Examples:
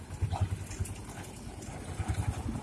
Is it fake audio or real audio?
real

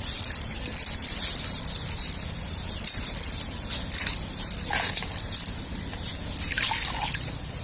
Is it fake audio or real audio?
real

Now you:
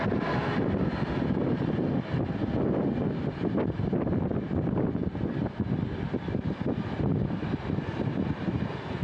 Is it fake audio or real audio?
real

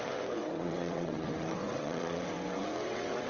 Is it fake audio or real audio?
fake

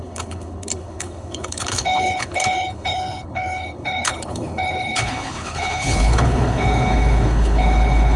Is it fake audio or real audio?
fake